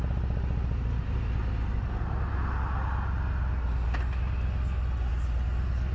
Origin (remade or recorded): recorded